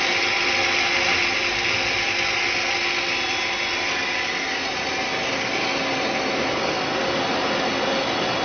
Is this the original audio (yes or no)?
yes